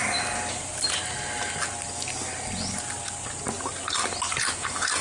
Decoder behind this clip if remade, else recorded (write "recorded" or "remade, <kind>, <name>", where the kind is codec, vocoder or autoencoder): recorded